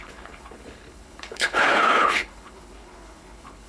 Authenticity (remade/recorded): remade